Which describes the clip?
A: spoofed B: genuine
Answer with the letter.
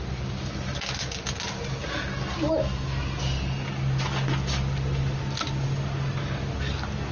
B